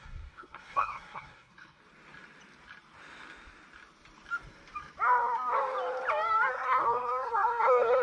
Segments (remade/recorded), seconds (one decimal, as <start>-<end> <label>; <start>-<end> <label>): 0.0-1.8 remade; 1.8-6.5 recorded; 6.5-8.0 remade